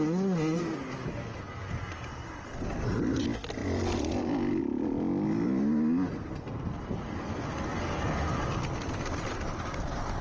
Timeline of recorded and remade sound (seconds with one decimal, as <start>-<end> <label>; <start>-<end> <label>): 0.0-6.2 recorded; 6.2-6.7 remade; 6.7-10.2 recorded